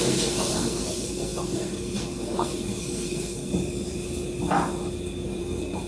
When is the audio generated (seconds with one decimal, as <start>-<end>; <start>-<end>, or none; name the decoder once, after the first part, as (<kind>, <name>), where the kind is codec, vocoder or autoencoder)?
0.0-3.5 (codec, SNAC); 5.4-5.9